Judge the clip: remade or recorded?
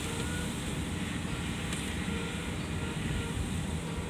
recorded